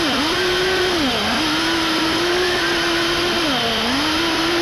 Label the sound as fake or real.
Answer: real